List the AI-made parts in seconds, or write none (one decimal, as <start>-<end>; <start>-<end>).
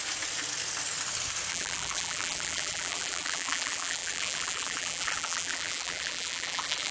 1.5-6.9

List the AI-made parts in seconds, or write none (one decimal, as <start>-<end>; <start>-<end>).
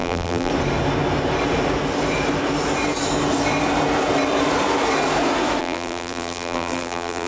0.0-0.5; 5.6-7.3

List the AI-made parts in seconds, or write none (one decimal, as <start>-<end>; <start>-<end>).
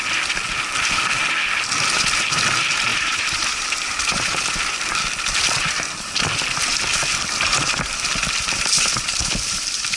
2.9-4.6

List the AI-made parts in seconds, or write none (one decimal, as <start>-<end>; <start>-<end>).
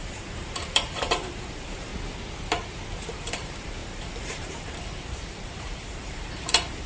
0.0-1.9; 3.1-6.9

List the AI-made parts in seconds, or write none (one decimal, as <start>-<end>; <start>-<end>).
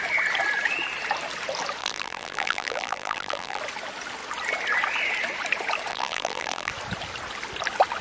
1.8-3.6; 5.9-6.7